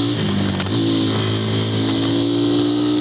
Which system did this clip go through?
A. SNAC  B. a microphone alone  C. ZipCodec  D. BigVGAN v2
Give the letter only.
B